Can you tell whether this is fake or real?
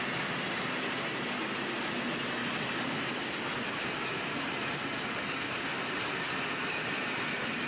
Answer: real